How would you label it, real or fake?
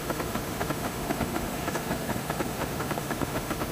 fake